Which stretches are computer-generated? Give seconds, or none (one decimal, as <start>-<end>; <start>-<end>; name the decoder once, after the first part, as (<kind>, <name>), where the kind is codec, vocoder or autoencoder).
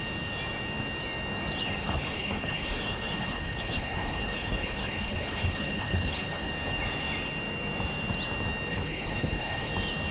1.8-6.5 (codec, HILCodec); 8.7-9.7